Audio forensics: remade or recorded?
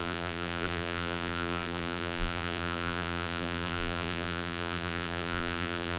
remade